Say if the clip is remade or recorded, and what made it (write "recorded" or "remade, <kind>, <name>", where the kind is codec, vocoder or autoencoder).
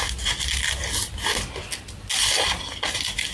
recorded